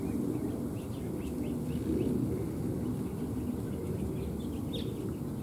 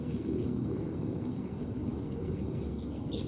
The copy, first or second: second